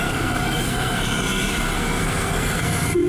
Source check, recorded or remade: remade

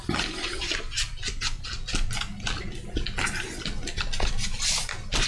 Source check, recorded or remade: recorded